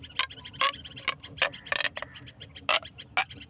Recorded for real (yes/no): yes